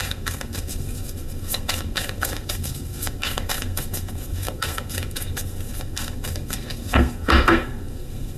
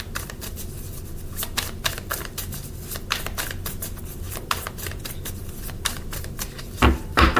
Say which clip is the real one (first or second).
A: second